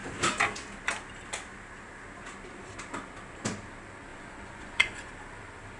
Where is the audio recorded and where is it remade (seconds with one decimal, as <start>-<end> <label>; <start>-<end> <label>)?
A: 0.0-4.1 recorded; 4.1-5.1 remade; 5.1-5.8 recorded